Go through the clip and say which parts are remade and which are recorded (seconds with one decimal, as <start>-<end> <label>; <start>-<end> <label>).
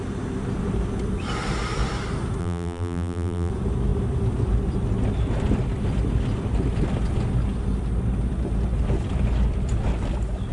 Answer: 0.0-2.4 recorded; 2.4-3.5 remade; 3.5-10.5 recorded